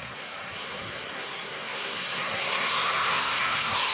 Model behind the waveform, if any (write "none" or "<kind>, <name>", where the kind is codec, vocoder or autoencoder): codec, SNAC